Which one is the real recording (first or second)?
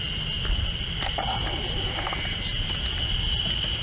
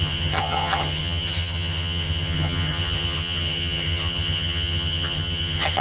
first